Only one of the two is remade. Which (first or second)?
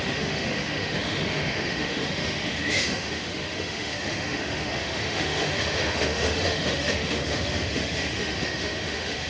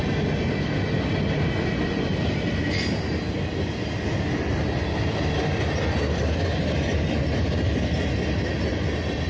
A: first